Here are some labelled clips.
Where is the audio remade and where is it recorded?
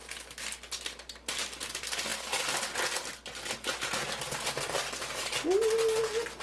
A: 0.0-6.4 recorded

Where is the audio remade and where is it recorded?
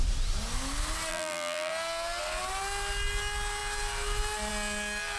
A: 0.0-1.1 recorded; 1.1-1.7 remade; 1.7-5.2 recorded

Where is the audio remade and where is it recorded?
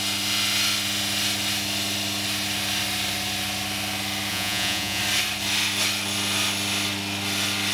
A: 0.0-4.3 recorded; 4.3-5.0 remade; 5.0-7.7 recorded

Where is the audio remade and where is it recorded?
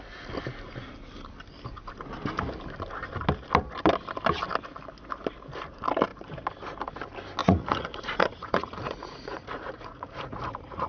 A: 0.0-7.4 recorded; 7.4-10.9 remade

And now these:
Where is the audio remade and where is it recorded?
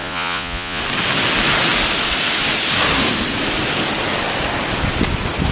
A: 0.0-0.8 remade; 0.8-5.5 recorded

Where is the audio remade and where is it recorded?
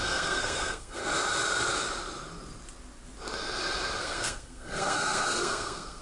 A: 0.0-1.0 remade; 1.0-4.0 recorded; 4.0-6.0 remade